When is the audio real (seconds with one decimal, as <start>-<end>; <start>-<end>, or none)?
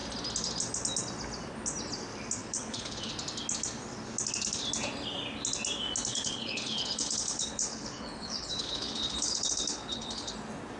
0.0-2.4; 3.1-6.1; 10.3-10.8